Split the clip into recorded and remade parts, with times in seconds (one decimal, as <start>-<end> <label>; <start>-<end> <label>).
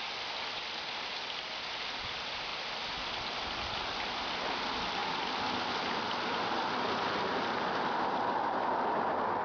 0.0-9.4 recorded